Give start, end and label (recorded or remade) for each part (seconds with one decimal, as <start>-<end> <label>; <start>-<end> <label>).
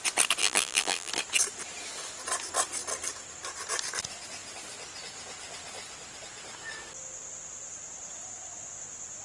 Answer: 0.0-0.4 recorded; 0.4-1.1 remade; 1.1-9.2 recorded